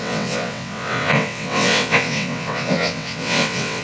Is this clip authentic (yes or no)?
no